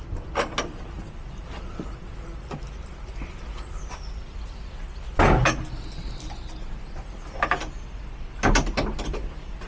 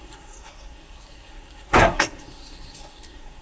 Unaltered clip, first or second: first